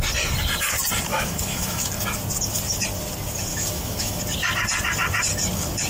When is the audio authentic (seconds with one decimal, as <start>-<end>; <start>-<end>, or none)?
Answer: 0.0-1.1; 1.9-3.5; 4.2-5.9